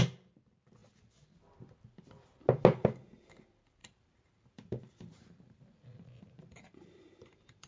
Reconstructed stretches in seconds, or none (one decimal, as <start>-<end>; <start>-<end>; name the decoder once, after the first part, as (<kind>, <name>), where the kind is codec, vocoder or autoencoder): 3.8-7.7 (vocoder, BigVGAN v2)